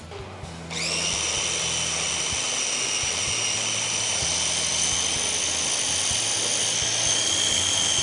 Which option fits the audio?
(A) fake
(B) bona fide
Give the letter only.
B